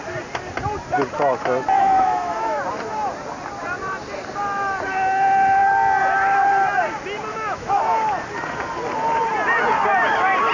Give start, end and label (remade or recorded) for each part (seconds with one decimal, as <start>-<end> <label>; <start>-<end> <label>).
0.0-1.8 recorded; 1.8-2.6 remade; 2.6-7.3 recorded; 7.3-7.8 remade; 7.8-10.5 recorded